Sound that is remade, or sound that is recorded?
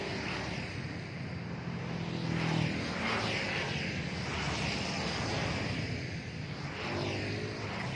recorded